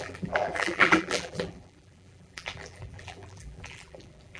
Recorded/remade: remade